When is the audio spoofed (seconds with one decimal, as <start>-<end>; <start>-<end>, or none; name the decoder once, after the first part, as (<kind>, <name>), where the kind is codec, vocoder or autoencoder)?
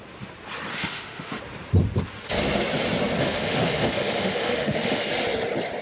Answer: 0.7-1.4 (autoencoder, DAC-VAE); 3.2-5.1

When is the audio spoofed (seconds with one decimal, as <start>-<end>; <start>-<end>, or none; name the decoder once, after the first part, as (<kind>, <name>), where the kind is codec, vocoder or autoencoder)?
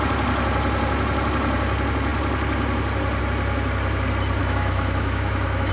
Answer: 4.4-5.7 (autoencoder, DAC-VAE)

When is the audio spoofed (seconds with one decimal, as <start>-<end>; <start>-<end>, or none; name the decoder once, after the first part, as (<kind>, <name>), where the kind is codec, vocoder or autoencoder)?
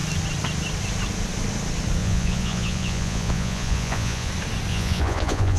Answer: 2.0-4.3 (vocoder, Vocos); 4.7-5.6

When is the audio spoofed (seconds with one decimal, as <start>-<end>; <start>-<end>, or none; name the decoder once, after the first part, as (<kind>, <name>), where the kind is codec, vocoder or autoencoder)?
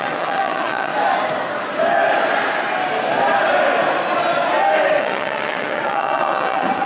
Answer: 0.0-0.9 (vocoder, WaveNeXt); 5.0-6.9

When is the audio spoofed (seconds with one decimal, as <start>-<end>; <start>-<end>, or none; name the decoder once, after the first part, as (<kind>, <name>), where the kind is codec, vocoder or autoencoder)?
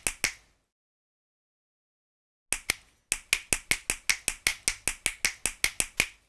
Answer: none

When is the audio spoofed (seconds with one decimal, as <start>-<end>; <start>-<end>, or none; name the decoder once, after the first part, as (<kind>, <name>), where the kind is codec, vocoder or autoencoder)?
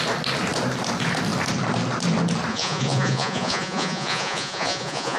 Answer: 2.5-5.2 (vocoder, Vocos)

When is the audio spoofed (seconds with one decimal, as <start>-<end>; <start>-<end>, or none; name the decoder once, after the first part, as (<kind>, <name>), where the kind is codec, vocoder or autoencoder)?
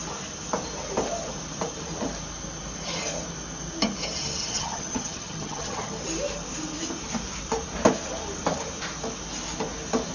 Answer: 4.4-5.9 (vocoder, HiFi-GAN)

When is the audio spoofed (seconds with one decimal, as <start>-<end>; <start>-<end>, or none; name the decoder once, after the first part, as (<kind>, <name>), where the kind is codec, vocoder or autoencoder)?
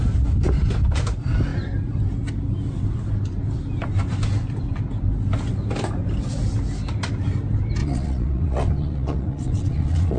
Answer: 7.8-10.2 (vocoder, Vocos)